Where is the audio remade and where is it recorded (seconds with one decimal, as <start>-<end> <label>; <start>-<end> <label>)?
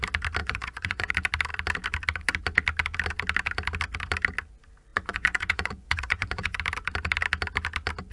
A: 0.0-0.4 recorded; 0.4-1.1 remade; 1.1-4.9 recorded; 4.9-6.6 remade; 6.6-8.1 recorded